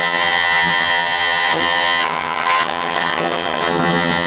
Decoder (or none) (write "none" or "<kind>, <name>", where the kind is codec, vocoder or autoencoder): vocoder, HiFi-GAN